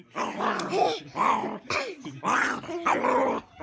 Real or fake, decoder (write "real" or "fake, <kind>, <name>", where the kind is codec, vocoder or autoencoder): real